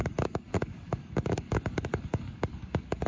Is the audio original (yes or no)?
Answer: no